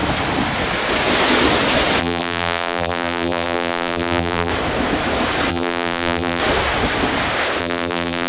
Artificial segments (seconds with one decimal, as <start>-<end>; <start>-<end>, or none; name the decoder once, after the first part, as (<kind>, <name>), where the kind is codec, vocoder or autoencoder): 2.0-4.5 (vocoder, BigVGAN v2); 5.5-6.4; 7.6-8.3